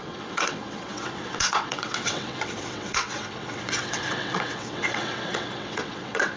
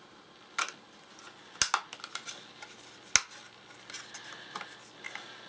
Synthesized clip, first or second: first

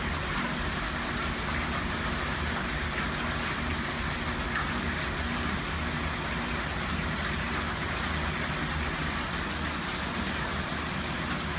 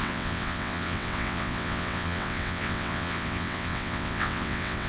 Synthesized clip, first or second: second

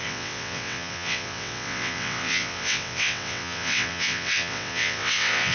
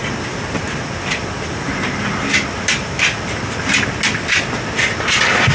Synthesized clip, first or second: first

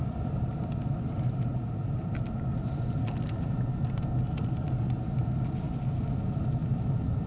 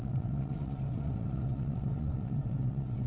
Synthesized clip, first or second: second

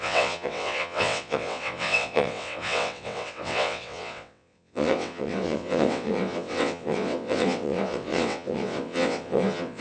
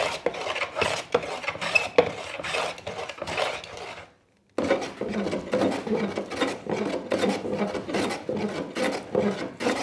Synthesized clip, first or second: first